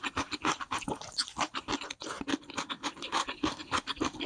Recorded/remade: recorded